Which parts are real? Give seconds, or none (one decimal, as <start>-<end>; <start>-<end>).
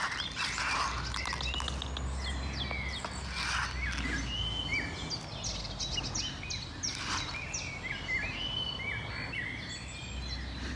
0.0-10.8